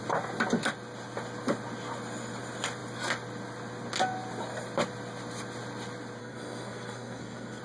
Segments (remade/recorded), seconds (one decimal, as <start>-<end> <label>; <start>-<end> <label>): 0.0-6.2 recorded; 6.2-7.6 remade